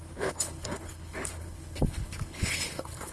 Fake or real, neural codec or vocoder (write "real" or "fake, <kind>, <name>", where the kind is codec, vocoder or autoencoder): fake, codec, HILCodec